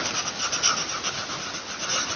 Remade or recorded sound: recorded